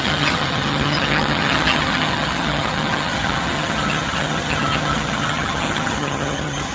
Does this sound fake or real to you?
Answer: fake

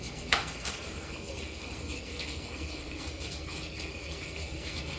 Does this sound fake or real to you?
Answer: fake